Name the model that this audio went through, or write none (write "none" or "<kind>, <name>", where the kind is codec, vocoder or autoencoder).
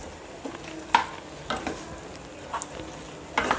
none